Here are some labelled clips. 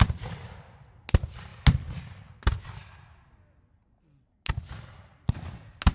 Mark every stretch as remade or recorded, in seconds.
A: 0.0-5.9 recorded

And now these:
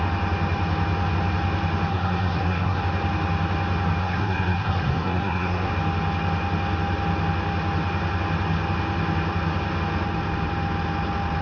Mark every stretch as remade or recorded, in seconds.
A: 0.0-1.9 recorded; 1.9-2.8 remade; 2.8-4.0 recorded; 4.0-5.7 remade; 5.7-11.4 recorded

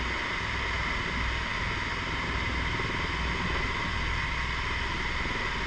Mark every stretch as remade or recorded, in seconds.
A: 0.0-5.7 recorded

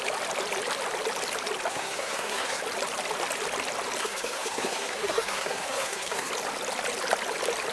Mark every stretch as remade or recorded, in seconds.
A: 0.0-1.7 recorded; 1.7-2.6 remade; 2.6-4.0 recorded; 4.0-6.3 remade; 6.3-7.7 recorded

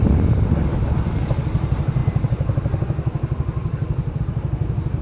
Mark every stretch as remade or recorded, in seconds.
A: 0.0-5.0 recorded

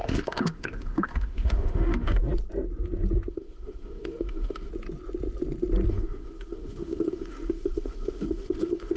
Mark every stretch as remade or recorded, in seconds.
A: 0.0-2.2 remade; 2.2-3.3 recorded; 3.3-4.7 remade; 4.7-5.9 recorded; 5.9-9.0 remade

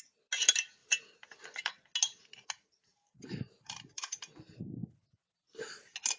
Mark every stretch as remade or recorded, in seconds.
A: 0.0-0.8 recorded; 0.8-1.7 remade; 1.7-2.9 recorded; 2.9-4.2 remade; 4.2-6.2 recorded